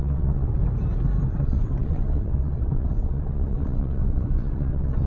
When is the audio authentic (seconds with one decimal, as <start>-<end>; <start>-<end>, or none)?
0.6-1.3